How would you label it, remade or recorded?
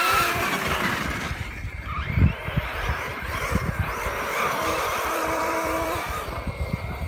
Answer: remade